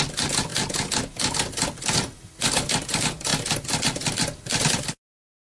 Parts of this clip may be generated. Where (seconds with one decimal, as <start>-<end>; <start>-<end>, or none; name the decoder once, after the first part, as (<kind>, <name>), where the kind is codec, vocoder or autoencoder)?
none